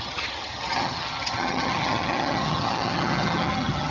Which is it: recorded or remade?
remade